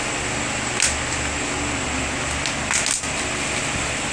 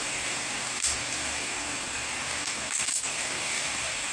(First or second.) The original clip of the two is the first